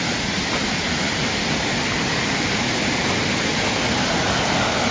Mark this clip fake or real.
real